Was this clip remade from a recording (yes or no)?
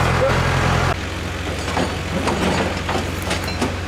no